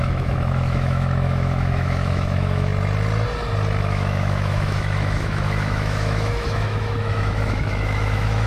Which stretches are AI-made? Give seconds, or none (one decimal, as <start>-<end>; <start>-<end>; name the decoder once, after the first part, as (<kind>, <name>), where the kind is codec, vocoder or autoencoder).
0.0-2.7 (autoencoder, DAC-VAE); 3.8-8.5